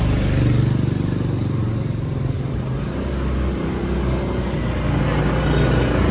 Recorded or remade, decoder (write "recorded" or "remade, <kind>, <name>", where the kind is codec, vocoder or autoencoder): recorded